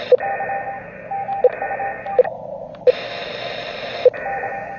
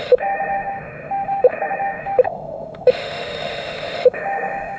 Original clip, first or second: first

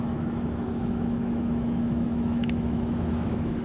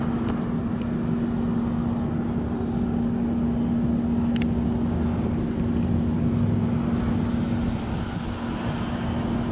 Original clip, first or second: second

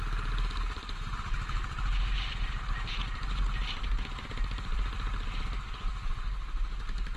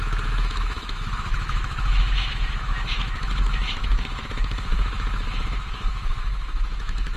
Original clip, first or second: first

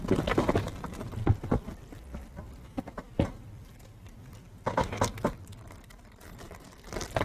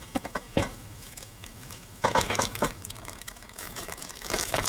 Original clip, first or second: first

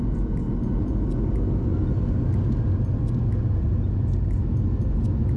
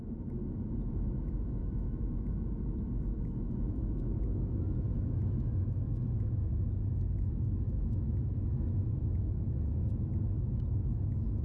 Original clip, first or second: first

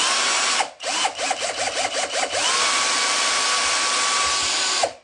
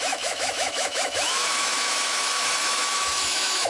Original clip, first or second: first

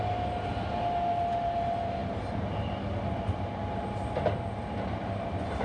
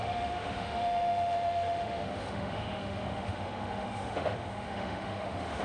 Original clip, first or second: first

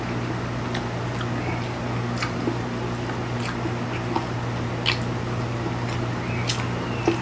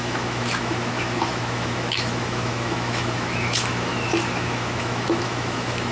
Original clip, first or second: first